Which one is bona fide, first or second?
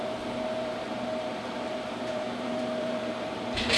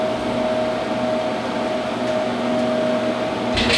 second